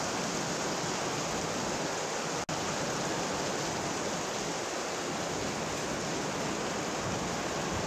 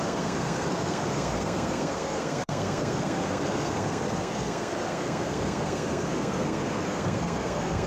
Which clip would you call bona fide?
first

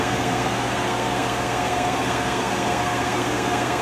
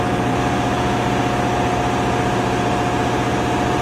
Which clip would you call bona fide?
second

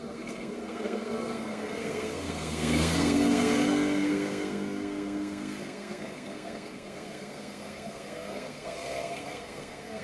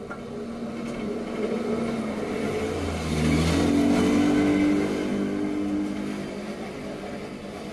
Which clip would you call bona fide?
second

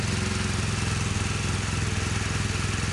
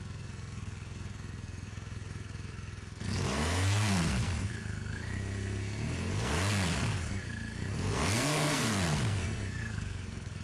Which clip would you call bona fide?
first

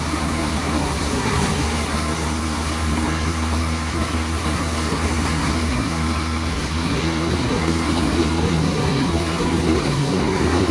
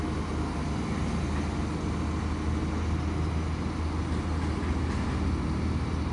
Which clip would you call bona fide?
second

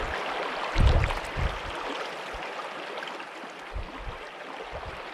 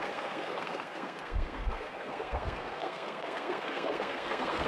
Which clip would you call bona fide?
first